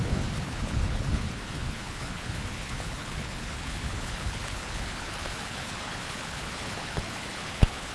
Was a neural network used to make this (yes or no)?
yes